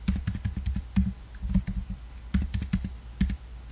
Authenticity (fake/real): real